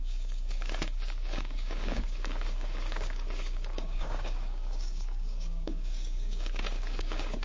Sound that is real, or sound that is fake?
fake